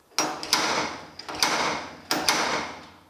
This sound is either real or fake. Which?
real